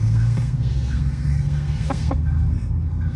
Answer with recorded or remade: remade